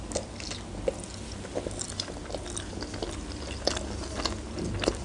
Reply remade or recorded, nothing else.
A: recorded